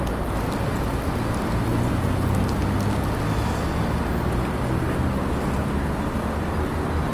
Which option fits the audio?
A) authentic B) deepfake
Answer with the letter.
A